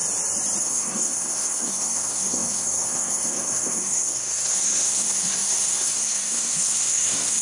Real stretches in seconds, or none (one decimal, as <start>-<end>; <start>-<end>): 0.0-0.6